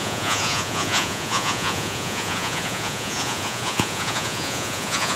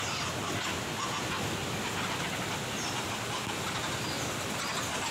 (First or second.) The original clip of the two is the second